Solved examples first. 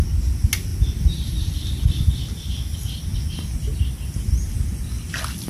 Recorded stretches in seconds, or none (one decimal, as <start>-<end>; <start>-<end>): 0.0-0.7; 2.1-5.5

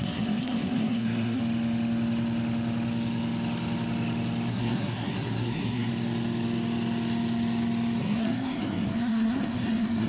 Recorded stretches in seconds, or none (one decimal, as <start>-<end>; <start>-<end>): 1.4-4.5; 5.9-8.0

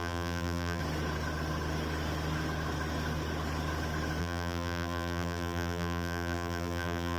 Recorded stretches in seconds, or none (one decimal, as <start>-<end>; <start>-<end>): 0.8-4.2

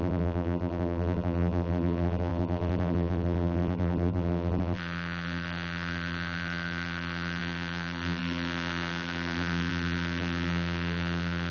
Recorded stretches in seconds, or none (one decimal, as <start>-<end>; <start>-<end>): none

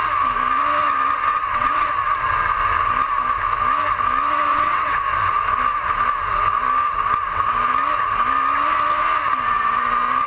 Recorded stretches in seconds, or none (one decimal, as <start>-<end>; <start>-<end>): 0.0-1.3; 1.9-4.5; 5.0-10.3